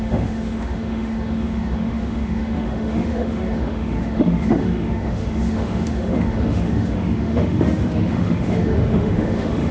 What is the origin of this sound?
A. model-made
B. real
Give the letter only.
A